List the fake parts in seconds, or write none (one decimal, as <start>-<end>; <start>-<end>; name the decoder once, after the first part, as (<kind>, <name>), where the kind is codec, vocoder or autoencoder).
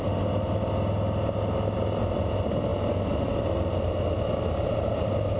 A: none